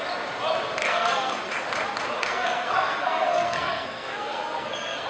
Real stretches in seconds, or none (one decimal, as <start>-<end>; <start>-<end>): 0.0-0.8; 1.5-2.2